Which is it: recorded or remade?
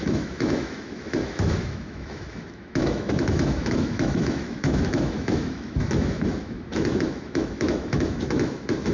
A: remade